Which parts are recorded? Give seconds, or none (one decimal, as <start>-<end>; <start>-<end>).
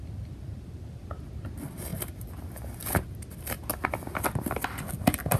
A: 0.0-5.4